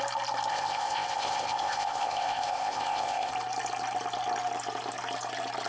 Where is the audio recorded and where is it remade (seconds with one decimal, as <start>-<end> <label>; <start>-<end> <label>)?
0.0-0.5 recorded; 0.5-3.3 remade; 3.3-5.7 recorded